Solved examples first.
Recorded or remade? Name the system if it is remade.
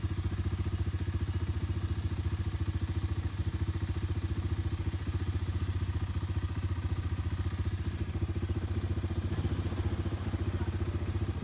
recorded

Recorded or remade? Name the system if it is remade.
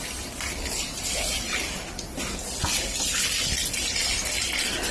recorded